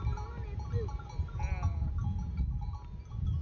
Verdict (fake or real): real